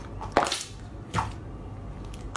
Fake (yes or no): no